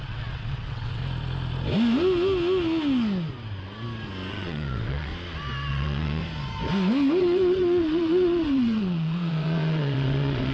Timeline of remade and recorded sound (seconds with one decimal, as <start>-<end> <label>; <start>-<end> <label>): 0.0-1.0 remade; 1.0-4.3 recorded; 4.3-5.1 remade; 5.1-5.7 recorded; 5.7-6.2 remade; 6.2-7.2 recorded; 7.2-10.5 remade